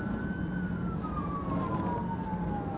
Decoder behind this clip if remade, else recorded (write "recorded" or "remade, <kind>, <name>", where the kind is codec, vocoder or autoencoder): recorded